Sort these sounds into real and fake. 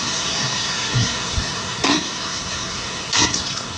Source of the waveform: fake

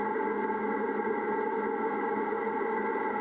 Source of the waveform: real